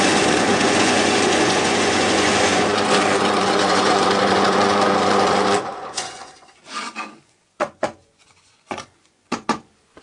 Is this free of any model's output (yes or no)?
no